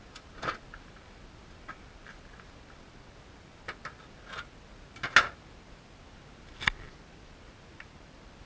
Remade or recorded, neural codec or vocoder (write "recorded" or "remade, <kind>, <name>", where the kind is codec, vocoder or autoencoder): recorded